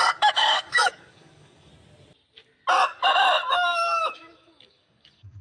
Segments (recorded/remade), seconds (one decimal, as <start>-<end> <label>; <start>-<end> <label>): 0.0-1.7 remade; 1.7-3.5 recorded; 3.5-5.4 remade